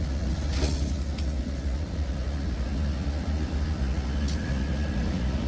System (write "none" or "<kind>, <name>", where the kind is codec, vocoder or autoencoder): vocoder, Vocos